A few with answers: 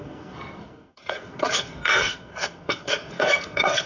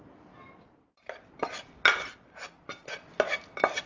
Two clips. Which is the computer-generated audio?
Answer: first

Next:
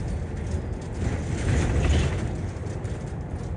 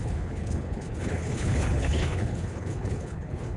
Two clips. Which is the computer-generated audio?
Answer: second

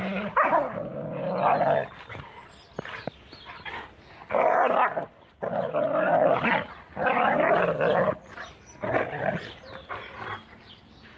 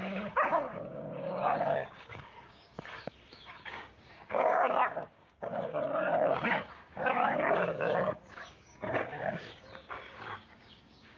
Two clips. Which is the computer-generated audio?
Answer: second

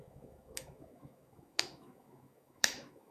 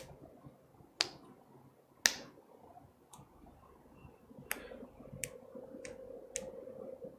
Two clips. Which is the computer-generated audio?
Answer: first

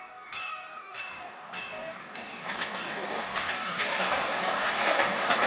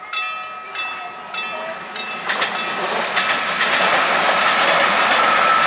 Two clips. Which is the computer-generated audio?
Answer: first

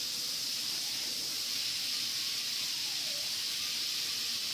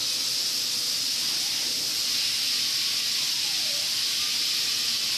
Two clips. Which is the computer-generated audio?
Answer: first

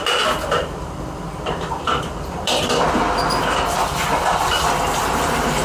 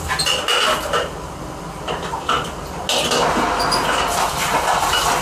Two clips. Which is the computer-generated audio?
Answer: first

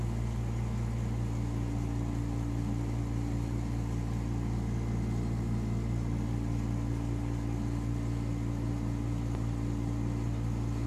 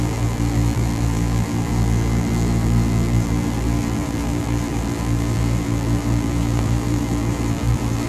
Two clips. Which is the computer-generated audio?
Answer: second